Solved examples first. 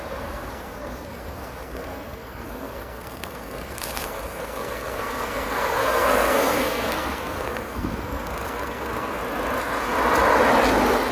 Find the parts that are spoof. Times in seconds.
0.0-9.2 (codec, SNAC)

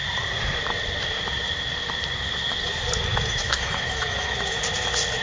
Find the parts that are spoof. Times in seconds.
3.1-4.6 (autoencoder, DAC-VAE)